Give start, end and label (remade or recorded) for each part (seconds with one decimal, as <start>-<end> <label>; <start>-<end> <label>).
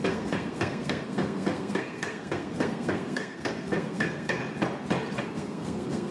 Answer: 0.0-4.4 remade; 4.4-5.2 recorded; 5.2-6.1 remade